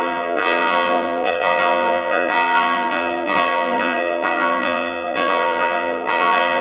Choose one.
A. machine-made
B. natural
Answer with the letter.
A